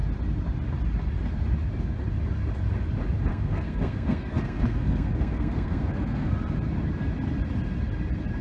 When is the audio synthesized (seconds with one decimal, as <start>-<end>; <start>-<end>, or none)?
3.3-6.3